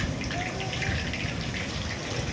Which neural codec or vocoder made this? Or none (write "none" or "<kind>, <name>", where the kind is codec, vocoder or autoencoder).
none